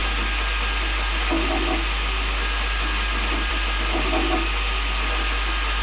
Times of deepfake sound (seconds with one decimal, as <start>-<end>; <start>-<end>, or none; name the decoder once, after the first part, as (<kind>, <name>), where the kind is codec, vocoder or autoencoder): none